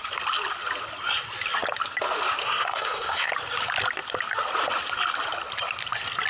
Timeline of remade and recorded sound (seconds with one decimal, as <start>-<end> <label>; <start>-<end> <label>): 0.0-2.4 recorded; 2.4-3.3 remade; 3.3-6.3 recorded